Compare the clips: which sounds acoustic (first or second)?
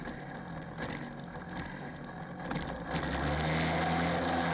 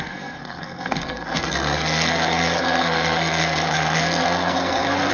first